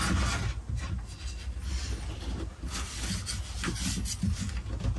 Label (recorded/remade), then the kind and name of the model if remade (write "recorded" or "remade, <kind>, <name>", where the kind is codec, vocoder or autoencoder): recorded